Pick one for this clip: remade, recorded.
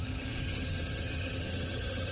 remade